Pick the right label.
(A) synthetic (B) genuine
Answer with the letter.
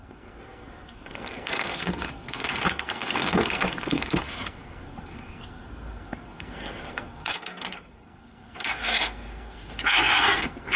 A